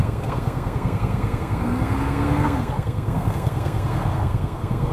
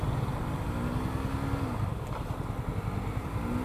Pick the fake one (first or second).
first